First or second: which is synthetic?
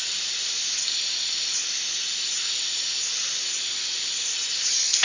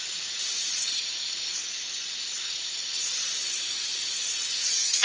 second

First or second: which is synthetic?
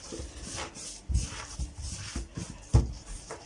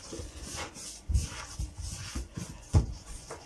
second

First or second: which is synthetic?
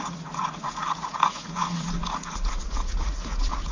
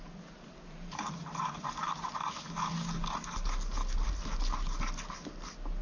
first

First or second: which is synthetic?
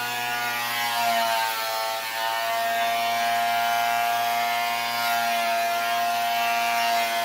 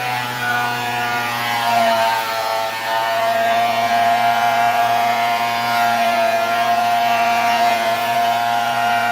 second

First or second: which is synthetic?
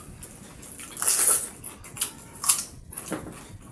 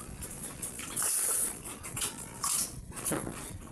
second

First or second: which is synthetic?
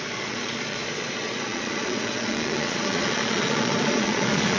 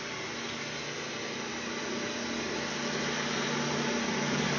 first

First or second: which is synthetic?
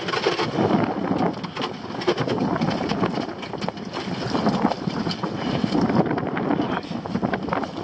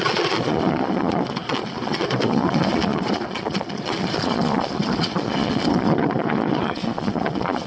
second